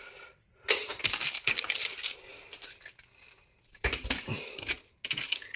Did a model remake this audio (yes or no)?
no